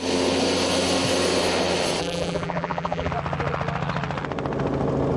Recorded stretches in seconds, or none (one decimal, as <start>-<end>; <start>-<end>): 0.0-2.0; 3.1-5.2